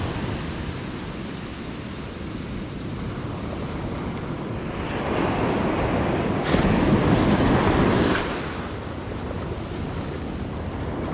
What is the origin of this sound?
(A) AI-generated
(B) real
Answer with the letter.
B